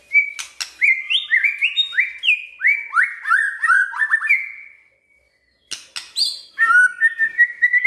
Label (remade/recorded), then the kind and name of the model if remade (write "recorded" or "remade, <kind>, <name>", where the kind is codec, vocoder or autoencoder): recorded